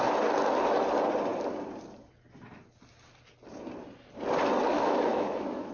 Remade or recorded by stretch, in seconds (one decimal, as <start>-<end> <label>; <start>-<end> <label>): 0.0-4.7 recorded; 4.7-5.7 remade